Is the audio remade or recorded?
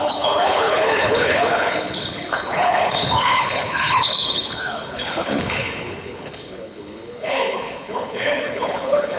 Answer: remade